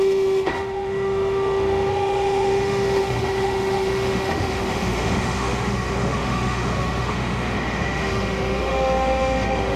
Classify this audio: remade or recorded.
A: remade